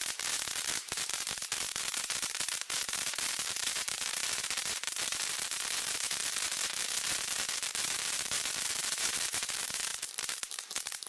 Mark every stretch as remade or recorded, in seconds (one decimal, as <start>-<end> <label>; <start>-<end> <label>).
0.0-6.5 remade; 6.5-7.6 recorded; 7.6-11.1 remade